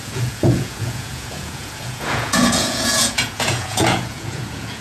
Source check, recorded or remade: remade